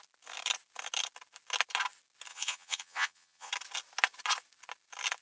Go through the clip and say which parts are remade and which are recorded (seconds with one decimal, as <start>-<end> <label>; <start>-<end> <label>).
0.0-2.3 recorded; 2.3-3.5 remade; 3.5-5.2 recorded